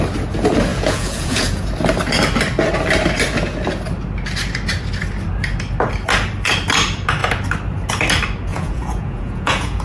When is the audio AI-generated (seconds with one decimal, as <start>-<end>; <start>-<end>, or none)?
0.7-1.7; 8.5-9.8

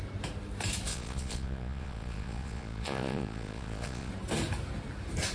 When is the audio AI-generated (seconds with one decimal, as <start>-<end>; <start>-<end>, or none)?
0.9-4.1

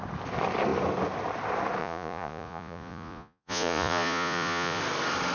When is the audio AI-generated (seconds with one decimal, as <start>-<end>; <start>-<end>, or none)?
1.8-4.8

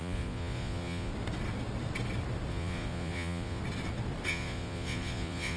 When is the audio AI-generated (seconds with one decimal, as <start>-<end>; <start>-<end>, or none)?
0.0-1.1; 2.5-3.6; 4.3-5.6

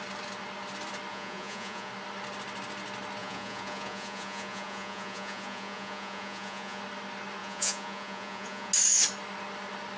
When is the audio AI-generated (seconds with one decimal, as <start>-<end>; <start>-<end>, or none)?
1.1-1.9; 3.2-6.8; 7.4-8.7

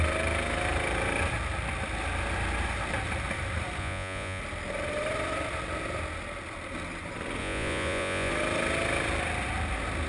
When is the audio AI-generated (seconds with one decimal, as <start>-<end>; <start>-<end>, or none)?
3.8-4.4; 7.4-8.3

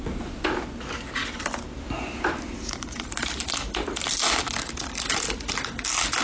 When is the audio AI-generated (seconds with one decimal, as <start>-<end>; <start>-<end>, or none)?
none

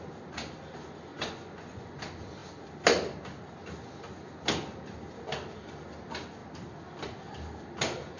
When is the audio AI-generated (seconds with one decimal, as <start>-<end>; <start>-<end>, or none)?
1.1-2.0